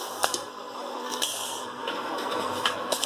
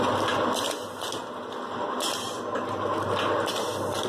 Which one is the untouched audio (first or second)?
second